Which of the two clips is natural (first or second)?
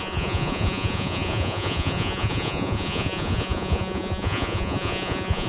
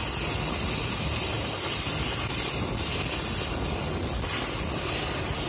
second